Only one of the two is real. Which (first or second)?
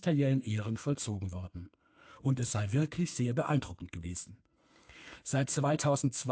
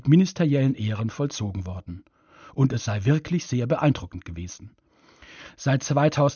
second